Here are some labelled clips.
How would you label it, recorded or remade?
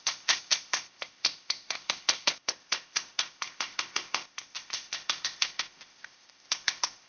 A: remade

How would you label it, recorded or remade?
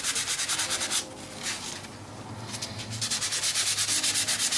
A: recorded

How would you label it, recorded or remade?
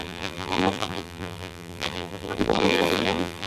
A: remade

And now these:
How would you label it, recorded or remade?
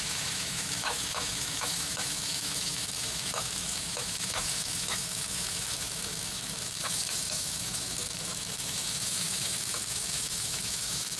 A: remade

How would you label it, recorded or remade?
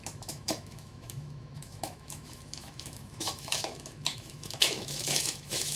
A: remade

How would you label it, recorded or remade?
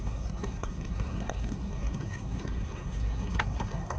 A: remade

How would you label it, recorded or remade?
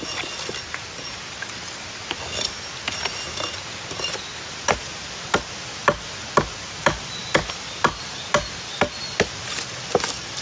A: recorded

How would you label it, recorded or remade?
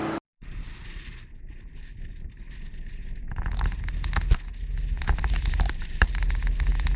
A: recorded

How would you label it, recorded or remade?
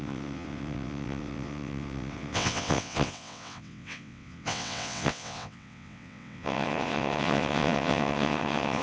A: remade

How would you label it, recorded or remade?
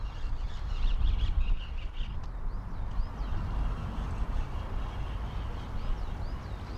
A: recorded